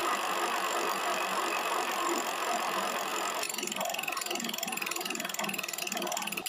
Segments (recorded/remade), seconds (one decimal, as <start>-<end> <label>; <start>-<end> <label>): 0.0-3.1 recorded; 3.1-5.8 remade; 5.8-6.5 recorded